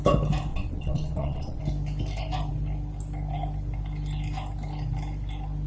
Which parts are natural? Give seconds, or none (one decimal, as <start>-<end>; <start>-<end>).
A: 0.0-0.5; 1.6-5.7

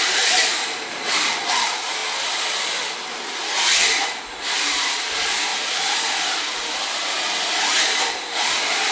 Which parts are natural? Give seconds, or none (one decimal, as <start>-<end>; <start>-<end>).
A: 2.0-4.0; 5.5-7.8

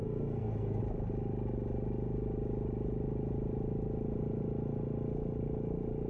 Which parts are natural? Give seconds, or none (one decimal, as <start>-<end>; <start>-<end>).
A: 0.8-6.1

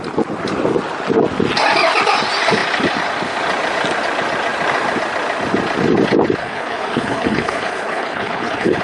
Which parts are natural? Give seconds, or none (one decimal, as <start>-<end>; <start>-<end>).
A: 0.0-6.4

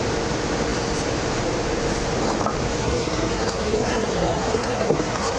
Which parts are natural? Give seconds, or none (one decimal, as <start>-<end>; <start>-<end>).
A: 0.0-2.8

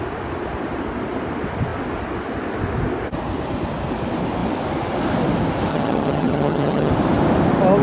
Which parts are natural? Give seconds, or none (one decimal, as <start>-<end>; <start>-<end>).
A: 0.0-5.7; 6.9-7.8

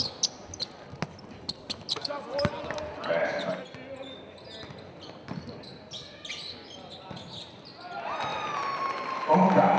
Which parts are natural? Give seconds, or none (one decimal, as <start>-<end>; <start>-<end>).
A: 0.0-9.8